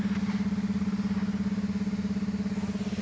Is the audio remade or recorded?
recorded